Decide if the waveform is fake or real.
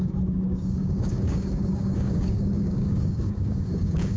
fake